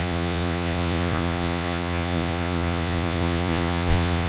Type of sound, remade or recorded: remade